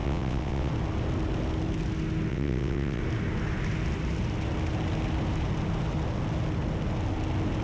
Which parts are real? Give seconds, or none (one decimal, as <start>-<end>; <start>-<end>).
0.7-2.3; 3.0-7.6